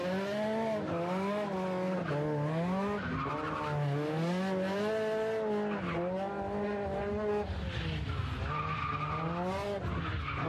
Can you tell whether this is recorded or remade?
recorded